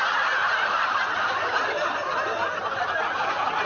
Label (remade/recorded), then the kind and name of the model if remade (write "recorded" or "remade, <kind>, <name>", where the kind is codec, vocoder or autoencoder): recorded